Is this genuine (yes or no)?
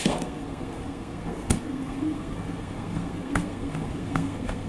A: no